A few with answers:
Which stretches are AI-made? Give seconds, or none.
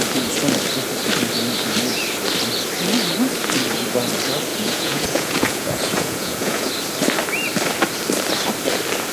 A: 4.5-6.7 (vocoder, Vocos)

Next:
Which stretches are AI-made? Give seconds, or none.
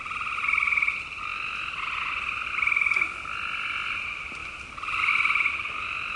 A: none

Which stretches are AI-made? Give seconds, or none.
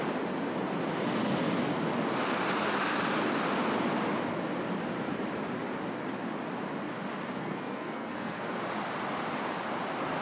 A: 7.4-8.6 (codec, SNAC)